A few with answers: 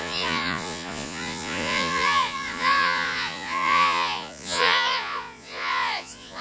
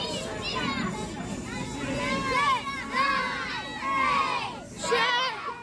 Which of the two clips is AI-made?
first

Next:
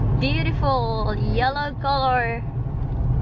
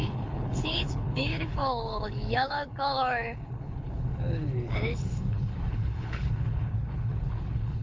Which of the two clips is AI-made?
second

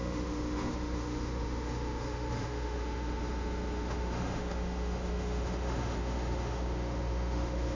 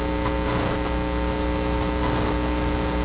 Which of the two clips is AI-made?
first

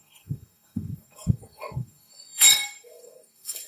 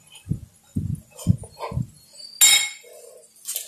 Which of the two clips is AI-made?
first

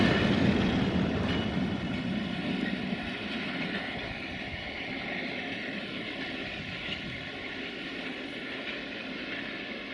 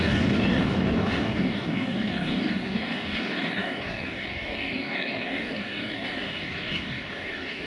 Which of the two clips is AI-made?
second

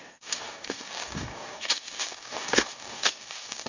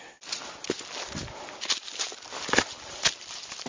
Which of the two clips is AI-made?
first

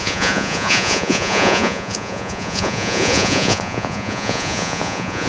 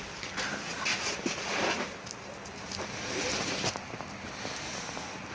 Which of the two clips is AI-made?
first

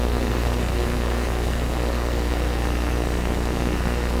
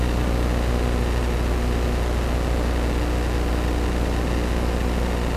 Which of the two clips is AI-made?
first